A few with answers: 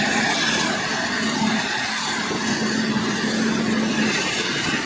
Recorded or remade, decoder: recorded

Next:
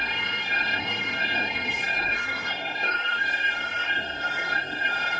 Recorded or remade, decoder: remade, codec, SNAC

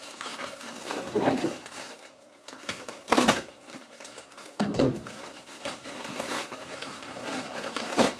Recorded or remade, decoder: remade, codec, SNAC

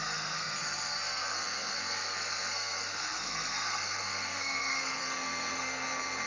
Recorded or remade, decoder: remade, codec, SNAC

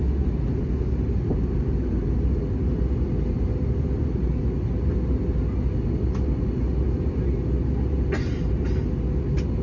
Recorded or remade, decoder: recorded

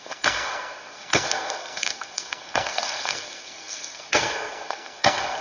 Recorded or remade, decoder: remade, codec, SNAC